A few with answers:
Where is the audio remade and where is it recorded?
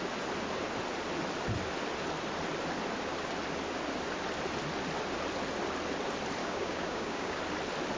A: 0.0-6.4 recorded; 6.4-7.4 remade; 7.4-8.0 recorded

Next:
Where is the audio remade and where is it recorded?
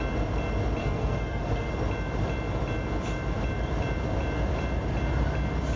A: 0.0-0.8 recorded; 0.8-1.7 remade; 1.7-5.8 recorded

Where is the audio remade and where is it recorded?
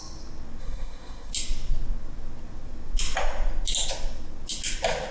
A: 0.0-0.6 recorded; 0.6-1.3 remade; 1.3-5.1 recorded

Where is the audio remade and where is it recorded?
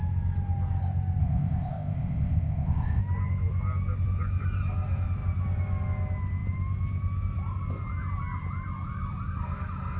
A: 0.0-1.2 recorded; 1.2-3.0 remade; 3.0-10.0 recorded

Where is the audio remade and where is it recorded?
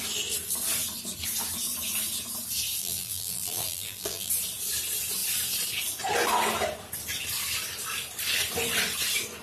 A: 0.0-2.8 recorded; 2.8-4.3 remade; 4.3-9.4 recorded